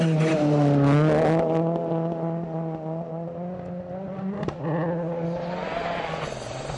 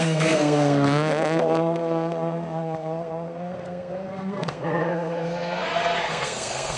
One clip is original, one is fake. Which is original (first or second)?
first